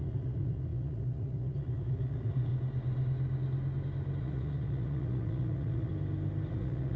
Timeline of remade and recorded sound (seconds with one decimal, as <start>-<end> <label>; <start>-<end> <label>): 0.0-2.5 remade; 2.5-4.2 recorded; 4.2-5.9 remade; 5.9-6.5 recorded; 6.5-7.0 remade

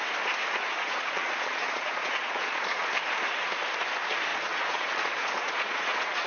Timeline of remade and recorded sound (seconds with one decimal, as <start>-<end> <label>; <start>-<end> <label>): 0.0-0.8 recorded; 0.8-2.9 remade; 2.9-4.3 recorded; 4.3-6.3 remade

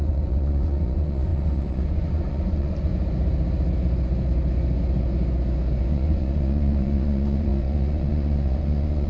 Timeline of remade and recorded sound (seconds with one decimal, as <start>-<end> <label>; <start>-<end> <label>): 0.0-2.9 remade; 2.9-5.9 recorded; 5.9-9.1 remade

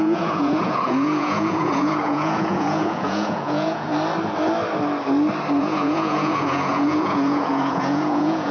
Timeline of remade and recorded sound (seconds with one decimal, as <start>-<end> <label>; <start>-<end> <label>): 0.0-3.9 remade; 3.9-5.6 recorded; 5.6-8.5 remade

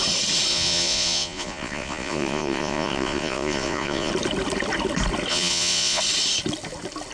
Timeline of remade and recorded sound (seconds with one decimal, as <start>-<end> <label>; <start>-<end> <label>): 0.0-0.5 recorded; 0.5-4.1 remade; 4.1-5.3 recorded; 5.3-6.0 remade; 6.0-7.1 recorded

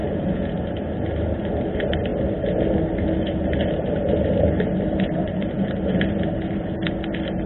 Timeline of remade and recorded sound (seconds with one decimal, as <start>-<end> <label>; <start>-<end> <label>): 0.0-0.5 remade; 0.5-7.5 recorded

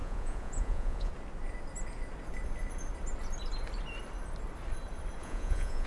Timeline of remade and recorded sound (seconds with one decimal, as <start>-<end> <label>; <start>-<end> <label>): 0.0-1.1 remade; 1.1-5.2 recorded; 5.2-5.9 remade